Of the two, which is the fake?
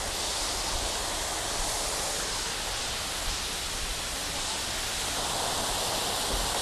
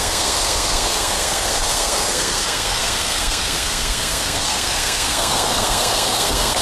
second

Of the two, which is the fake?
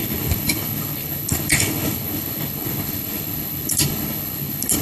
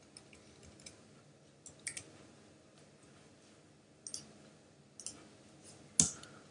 first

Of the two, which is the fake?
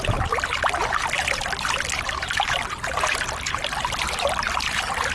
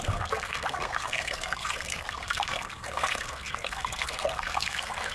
second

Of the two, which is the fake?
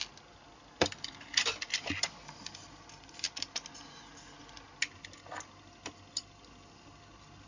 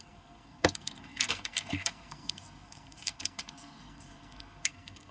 second